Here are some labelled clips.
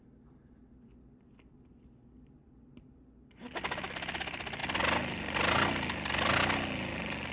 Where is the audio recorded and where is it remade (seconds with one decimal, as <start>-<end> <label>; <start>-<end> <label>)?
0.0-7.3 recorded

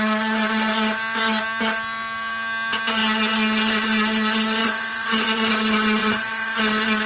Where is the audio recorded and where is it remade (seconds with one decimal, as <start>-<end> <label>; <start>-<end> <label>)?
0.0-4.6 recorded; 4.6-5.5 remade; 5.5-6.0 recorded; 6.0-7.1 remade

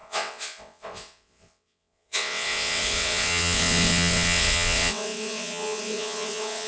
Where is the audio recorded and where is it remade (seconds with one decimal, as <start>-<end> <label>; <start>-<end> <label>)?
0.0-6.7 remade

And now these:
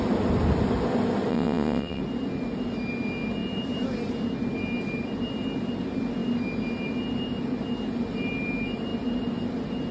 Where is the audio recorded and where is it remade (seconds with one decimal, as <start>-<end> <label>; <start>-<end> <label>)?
0.0-1.3 recorded; 1.3-2.0 remade; 2.0-9.9 recorded